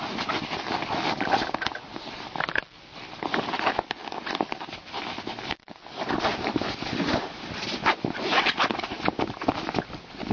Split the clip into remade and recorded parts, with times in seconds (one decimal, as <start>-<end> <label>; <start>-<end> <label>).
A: 0.0-6.3 recorded; 6.3-7.7 remade; 7.7-10.3 recorded